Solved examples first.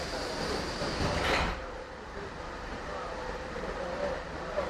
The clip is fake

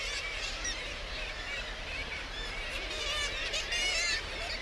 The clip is fake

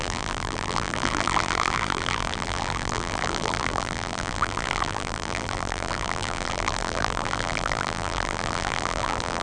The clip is fake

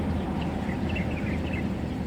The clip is fake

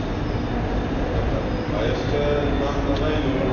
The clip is real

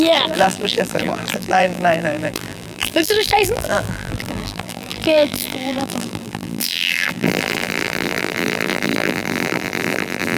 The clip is fake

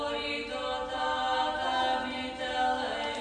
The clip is real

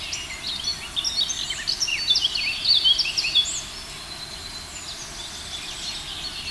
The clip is real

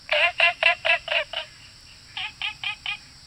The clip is fake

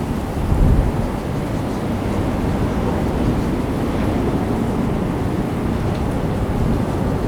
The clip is real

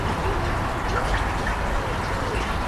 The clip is fake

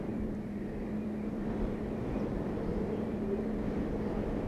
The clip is fake